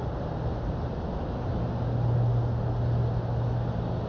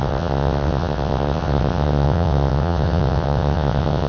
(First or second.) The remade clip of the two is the second